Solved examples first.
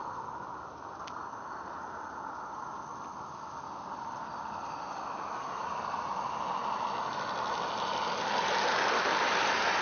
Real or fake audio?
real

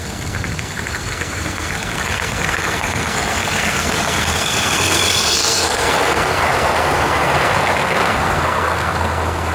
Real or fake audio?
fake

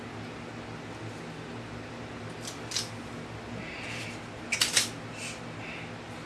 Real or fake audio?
real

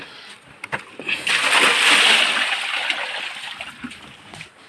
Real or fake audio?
real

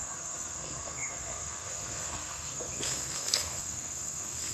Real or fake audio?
fake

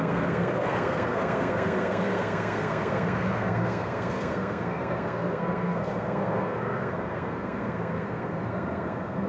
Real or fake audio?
fake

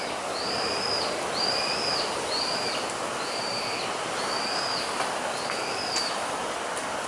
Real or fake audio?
real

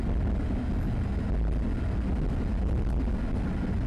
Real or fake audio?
real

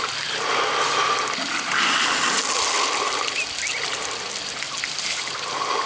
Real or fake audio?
real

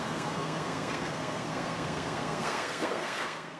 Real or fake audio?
fake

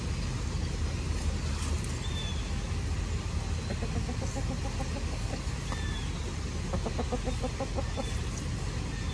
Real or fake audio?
real